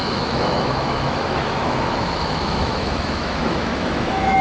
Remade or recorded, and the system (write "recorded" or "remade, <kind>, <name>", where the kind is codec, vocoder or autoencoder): remade, autoencoder, DAC-VAE